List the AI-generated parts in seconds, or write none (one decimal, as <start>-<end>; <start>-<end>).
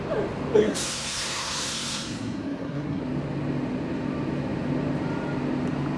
0.6-3.0